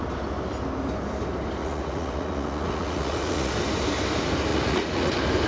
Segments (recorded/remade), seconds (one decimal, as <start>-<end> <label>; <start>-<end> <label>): 0.0-1.6 recorded; 1.6-3.5 remade; 3.5-4.5 recorded; 4.5-5.1 remade; 5.1-5.5 recorded